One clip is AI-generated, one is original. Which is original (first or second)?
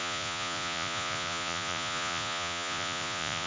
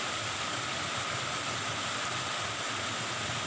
second